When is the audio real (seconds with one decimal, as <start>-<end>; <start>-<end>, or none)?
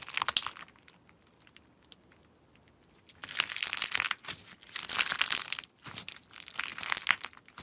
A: 0.0-7.6